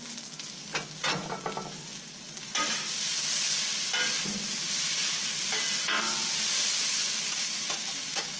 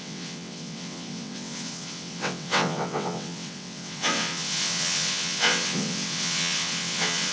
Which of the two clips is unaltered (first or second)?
first